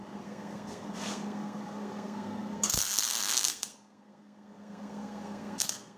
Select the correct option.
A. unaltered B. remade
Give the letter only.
B